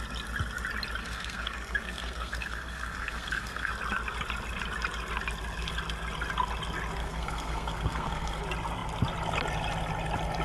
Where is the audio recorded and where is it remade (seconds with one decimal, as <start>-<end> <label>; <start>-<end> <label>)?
0.0-1.0 recorded; 1.0-3.7 remade; 3.7-7.0 recorded; 7.0-8.4 remade; 8.4-10.4 recorded

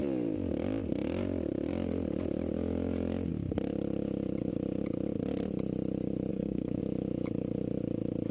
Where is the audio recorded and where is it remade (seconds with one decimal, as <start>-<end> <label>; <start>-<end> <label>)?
0.0-6.3 recorded; 6.3-6.8 remade; 6.8-8.3 recorded